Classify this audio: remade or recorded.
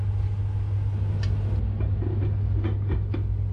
recorded